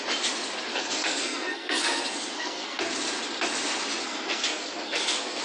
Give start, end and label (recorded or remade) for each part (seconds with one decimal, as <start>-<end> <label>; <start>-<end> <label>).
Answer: 0.0-0.7 recorded; 0.7-2.8 remade; 2.8-4.0 recorded; 4.0-5.4 remade